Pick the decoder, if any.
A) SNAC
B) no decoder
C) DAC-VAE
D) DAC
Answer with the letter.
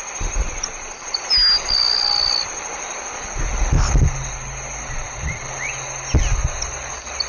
B